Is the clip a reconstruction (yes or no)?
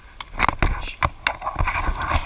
no